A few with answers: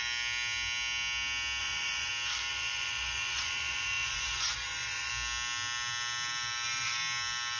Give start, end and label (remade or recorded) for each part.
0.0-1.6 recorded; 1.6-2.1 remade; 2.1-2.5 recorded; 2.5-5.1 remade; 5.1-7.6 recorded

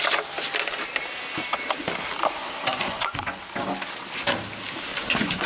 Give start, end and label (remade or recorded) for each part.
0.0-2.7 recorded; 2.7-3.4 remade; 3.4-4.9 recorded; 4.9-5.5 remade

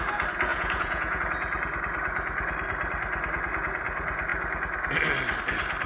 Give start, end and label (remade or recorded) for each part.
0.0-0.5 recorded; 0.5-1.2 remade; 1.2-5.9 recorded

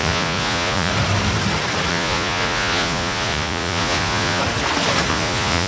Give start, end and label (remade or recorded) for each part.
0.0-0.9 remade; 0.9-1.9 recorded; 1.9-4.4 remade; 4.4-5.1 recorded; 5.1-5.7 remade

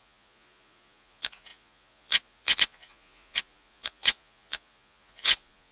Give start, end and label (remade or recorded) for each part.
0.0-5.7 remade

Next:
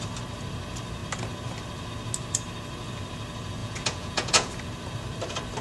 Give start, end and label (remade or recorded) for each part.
0.0-3.6 recorded; 3.6-4.5 remade; 4.5-5.6 recorded

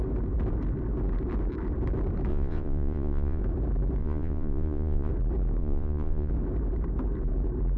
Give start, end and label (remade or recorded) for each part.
0.0-2.3 recorded; 2.3-3.4 remade; 3.4-4.0 recorded; 4.0-5.1 remade; 5.1-5.6 recorded; 5.6-6.3 remade; 6.3-7.8 recorded